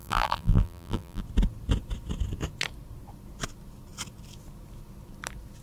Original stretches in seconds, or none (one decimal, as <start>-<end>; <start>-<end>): 1.2-5.6